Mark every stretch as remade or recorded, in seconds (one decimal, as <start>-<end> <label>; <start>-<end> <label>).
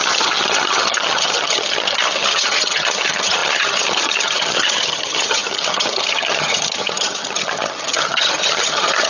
0.0-9.1 remade